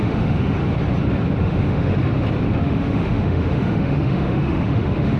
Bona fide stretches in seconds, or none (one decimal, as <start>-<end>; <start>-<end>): 0.6-1.4; 1.9-2.6